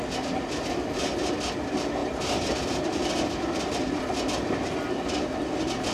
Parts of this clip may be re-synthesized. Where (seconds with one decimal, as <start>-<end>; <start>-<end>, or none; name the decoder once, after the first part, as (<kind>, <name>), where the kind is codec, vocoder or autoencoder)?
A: 2.0-4.0 (vocoder, BigVGAN v2)